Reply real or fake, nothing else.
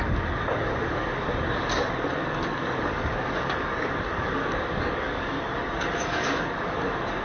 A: fake